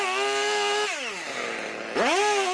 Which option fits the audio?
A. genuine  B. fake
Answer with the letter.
A